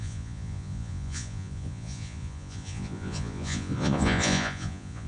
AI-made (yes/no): yes